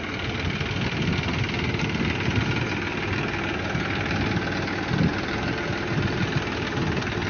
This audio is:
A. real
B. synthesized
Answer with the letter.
A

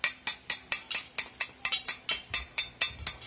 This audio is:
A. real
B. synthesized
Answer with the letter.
A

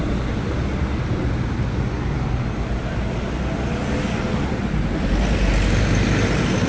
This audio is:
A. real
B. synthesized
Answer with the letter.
A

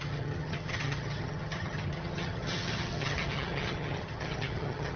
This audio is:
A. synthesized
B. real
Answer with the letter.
A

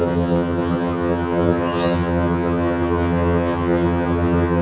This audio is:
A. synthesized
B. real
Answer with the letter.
A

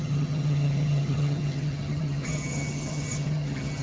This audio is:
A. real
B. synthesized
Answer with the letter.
B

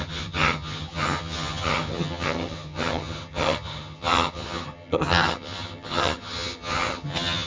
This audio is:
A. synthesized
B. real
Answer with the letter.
A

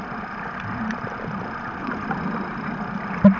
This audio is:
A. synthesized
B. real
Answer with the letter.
B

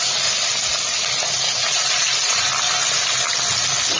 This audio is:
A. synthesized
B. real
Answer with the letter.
B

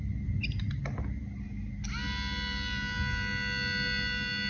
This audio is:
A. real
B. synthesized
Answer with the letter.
A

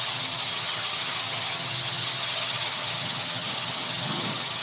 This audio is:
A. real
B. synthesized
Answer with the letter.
B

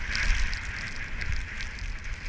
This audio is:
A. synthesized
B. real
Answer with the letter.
B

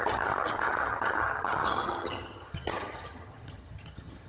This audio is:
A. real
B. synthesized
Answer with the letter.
B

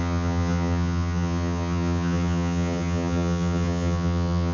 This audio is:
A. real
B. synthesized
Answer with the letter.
B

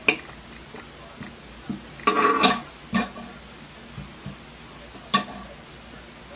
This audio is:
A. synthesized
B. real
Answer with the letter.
B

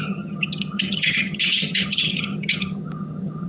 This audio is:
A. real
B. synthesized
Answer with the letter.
B